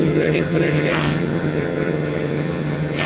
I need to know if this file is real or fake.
fake